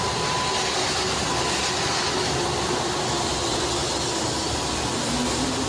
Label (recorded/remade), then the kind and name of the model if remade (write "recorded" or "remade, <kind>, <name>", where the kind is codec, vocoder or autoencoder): recorded